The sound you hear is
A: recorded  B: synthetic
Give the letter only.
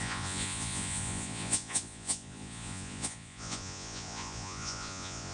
B